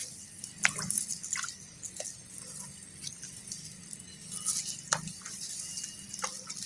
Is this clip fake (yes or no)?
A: no